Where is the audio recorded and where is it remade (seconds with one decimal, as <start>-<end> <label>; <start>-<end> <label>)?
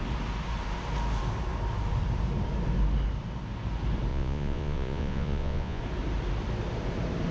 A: 0.0-4.1 recorded; 4.1-5.8 remade; 5.8-7.3 recorded